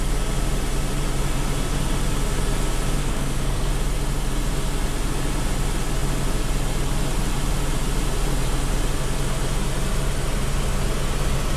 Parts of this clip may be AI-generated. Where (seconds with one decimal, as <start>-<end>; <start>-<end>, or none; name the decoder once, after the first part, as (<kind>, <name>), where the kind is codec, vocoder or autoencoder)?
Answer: 3.0-3.7 (codec, SNAC)